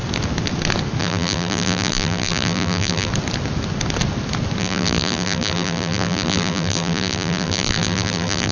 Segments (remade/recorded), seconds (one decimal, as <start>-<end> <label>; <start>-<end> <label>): 0.0-1.0 recorded; 1.0-3.1 remade; 3.1-4.6 recorded; 4.6-8.5 remade